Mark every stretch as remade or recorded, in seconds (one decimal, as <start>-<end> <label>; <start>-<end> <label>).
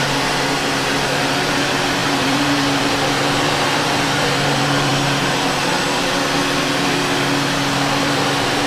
0.0-4.9 remade; 4.9-8.0 recorded; 8.0-8.7 remade